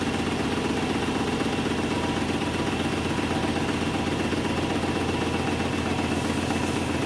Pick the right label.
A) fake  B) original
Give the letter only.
B